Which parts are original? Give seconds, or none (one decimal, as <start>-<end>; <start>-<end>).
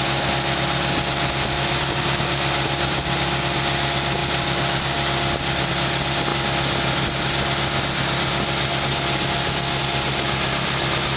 0.0-11.2